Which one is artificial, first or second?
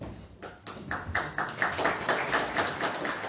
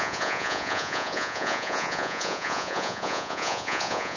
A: second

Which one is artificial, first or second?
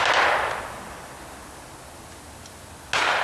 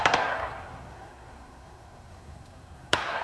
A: second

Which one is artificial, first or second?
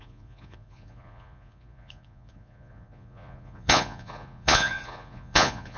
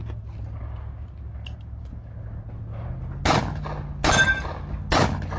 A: first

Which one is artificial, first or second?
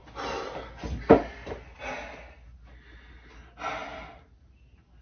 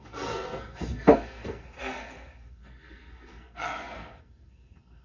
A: second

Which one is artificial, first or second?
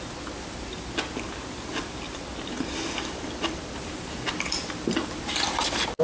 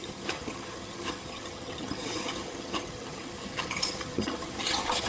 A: second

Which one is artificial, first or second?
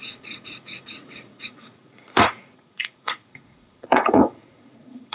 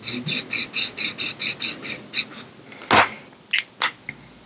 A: first